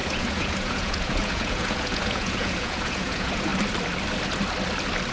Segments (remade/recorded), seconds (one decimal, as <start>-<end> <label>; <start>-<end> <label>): 0.0-3.5 remade; 3.5-5.1 recorded